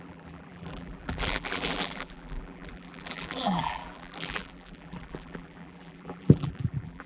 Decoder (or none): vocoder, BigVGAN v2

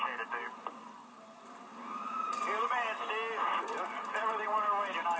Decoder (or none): none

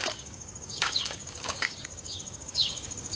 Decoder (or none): codec, DAC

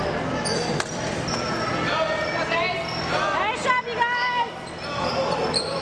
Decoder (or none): none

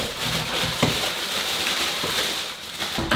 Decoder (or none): vocoder, BigVGAN v2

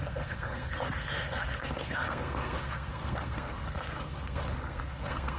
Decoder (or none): codec, SNAC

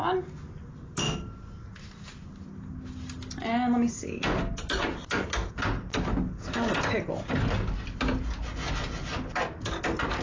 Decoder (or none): none